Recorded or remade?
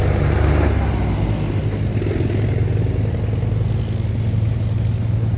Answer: recorded